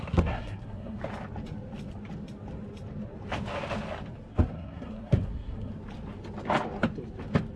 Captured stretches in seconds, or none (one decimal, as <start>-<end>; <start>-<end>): 1.0-4.3; 5.7-7.6